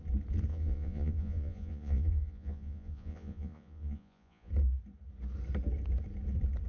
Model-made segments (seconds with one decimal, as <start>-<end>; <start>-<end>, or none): 0.5-4.5

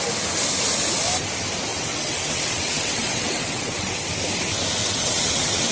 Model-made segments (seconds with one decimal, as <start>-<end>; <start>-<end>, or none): 1.7-4.0; 4.8-5.7